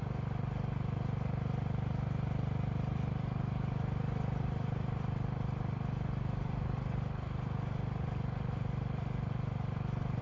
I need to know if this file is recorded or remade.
recorded